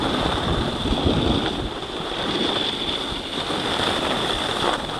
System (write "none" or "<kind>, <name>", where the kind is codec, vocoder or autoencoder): none